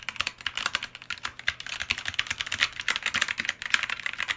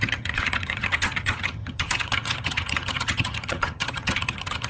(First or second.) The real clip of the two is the first